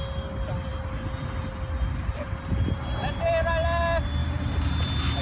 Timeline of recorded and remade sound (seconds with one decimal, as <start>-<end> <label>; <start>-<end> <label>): 0.0-4.2 recorded; 4.2-4.8 remade; 4.8-5.2 recorded